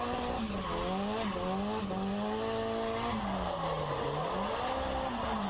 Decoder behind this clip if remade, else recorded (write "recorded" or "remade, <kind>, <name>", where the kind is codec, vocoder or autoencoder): recorded